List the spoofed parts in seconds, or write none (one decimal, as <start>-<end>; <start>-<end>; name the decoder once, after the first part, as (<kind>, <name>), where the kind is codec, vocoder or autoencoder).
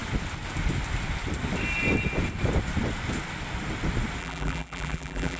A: 4.2-5.4 (vocoder, BigVGAN v2)